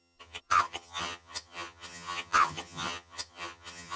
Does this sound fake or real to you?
fake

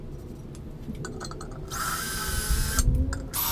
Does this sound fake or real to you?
real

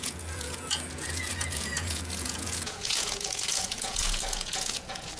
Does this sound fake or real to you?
fake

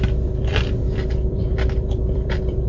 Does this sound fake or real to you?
fake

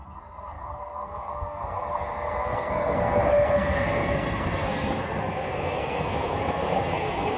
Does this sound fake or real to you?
fake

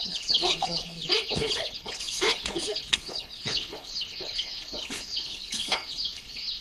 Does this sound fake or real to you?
fake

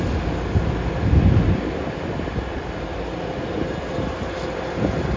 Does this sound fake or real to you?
real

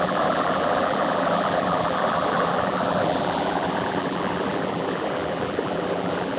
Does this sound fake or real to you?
fake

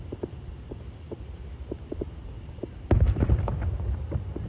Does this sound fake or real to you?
real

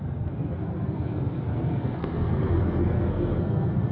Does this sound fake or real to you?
fake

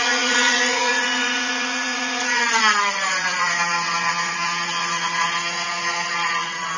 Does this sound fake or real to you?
fake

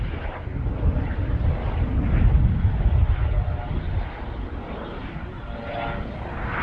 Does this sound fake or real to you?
real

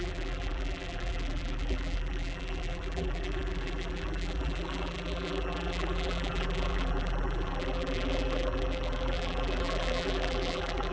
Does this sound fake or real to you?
fake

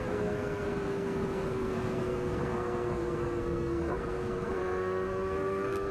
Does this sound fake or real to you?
fake